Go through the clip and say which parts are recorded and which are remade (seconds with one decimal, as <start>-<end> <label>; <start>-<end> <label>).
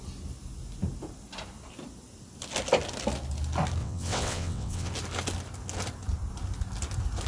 0.0-3.8 recorded; 3.8-4.9 remade; 4.9-7.3 recorded